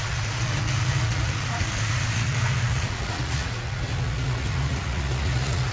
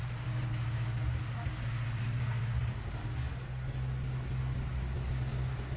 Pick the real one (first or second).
second